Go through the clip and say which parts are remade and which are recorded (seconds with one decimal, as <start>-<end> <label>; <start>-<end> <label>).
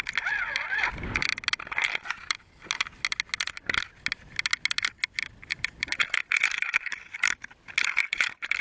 0.0-8.6 recorded